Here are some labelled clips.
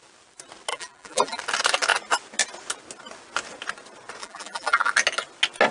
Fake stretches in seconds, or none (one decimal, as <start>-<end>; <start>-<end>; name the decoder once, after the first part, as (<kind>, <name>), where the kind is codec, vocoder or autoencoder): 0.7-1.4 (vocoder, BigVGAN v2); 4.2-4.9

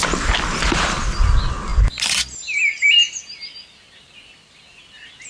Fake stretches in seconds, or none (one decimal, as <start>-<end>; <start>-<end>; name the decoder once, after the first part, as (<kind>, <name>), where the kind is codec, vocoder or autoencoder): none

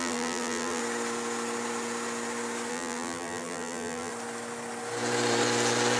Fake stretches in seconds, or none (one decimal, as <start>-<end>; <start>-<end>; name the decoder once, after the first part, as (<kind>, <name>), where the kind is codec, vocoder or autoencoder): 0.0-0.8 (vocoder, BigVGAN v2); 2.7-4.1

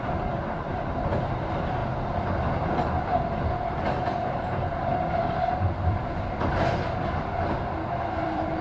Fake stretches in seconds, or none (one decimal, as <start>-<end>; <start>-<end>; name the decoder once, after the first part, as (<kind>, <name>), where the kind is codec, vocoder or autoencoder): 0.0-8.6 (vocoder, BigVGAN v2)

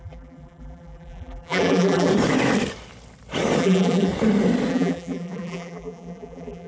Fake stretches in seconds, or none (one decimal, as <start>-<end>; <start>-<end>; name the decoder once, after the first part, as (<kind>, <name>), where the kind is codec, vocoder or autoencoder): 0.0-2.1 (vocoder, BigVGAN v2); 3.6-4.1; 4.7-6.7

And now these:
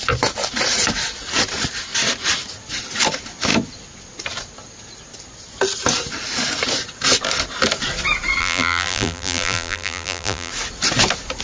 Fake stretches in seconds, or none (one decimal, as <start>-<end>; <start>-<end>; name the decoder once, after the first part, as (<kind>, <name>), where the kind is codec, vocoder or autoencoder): 8.4-10.5 (vocoder, BigVGAN v2)

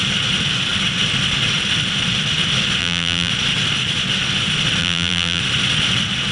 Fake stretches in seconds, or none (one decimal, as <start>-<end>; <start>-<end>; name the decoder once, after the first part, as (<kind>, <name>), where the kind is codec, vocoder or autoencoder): 2.8-3.3 (vocoder, BigVGAN v2); 4.8-5.4